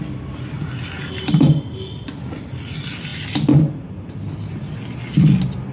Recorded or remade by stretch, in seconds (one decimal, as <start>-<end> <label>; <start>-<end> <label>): 0.0-5.7 recorded